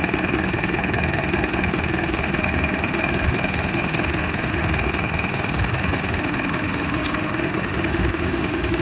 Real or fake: fake